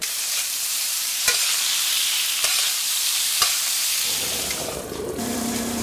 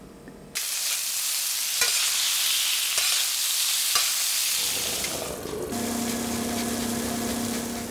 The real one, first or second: second